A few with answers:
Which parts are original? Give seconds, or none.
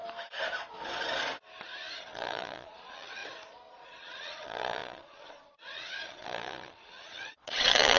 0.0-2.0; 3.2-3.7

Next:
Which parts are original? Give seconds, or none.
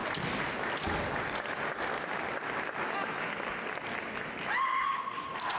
0.0-4.7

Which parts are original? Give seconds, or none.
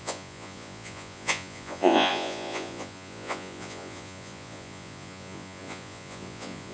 none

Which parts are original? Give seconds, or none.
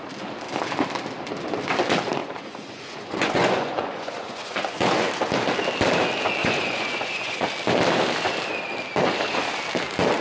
0.0-2.2; 5.1-6.4; 7.5-10.2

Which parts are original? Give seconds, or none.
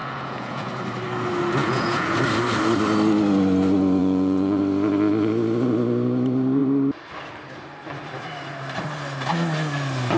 0.7-1.6; 2.2-4.0; 4.6-10.2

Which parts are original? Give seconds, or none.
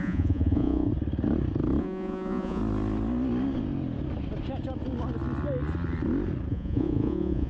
0.9-1.8; 2.6-6.5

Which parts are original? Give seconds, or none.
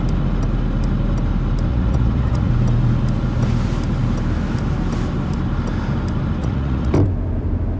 0.0-1.7; 2.5-6.4; 6.9-7.8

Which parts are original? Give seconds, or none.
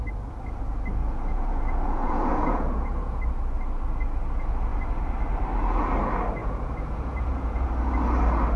0.0-1.0; 3.2-6.4; 7.7-8.6